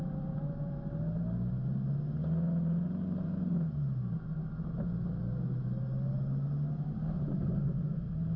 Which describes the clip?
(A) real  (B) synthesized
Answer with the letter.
A